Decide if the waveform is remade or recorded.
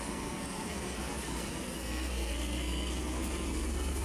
remade